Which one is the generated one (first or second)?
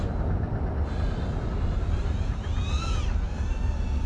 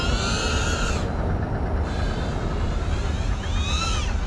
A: first